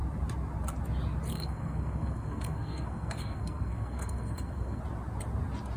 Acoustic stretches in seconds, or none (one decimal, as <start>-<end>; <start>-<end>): 0.0-1.3; 4.8-5.8